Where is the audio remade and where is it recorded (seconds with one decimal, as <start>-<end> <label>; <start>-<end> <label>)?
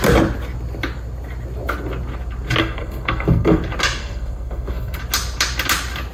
0.0-2.6 recorded; 2.6-3.6 remade; 3.6-4.0 recorded; 4.0-5.0 remade; 5.0-6.1 recorded